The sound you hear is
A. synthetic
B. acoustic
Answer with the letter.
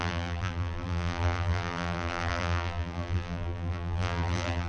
A